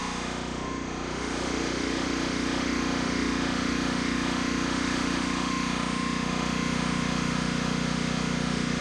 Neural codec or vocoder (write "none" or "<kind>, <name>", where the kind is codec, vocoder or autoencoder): autoencoder, DAC-VAE